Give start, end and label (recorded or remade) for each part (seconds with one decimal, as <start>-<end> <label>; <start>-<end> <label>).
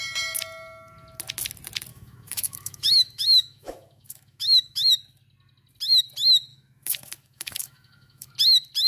0.0-1.9 recorded; 1.9-4.9 remade; 4.9-6.5 recorded; 6.5-8.3 remade; 8.3-8.9 recorded